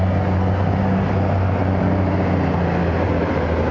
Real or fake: real